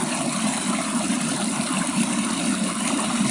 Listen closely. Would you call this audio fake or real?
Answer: real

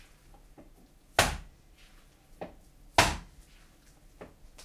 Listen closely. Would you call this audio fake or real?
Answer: real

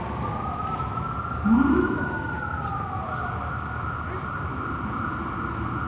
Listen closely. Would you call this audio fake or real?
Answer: real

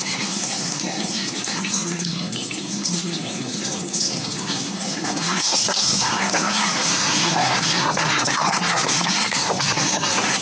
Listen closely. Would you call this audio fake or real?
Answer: fake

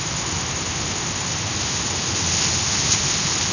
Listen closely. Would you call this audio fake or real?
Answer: real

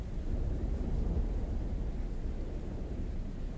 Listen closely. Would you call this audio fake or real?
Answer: real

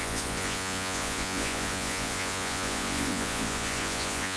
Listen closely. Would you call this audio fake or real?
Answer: fake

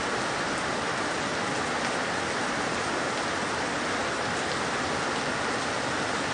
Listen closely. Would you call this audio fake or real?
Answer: real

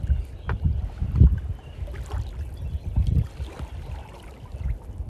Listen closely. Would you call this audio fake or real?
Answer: real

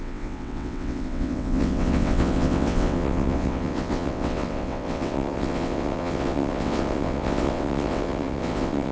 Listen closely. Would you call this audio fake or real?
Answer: fake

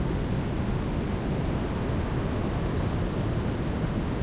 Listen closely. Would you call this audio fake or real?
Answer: real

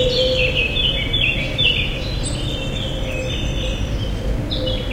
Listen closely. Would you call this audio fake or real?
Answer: real